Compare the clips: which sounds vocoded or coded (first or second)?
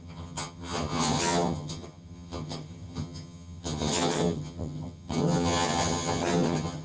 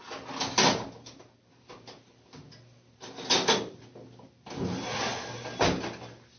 first